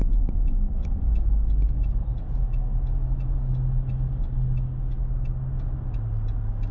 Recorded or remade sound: recorded